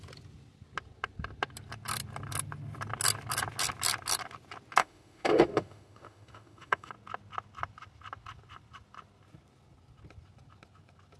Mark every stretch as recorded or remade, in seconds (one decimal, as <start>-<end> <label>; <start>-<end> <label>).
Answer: 0.0-4.8 recorded; 4.8-6.9 remade; 6.9-11.2 recorded